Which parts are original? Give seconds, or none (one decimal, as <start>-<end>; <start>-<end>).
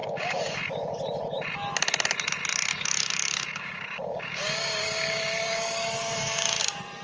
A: 0.6-2.7; 6.6-7.0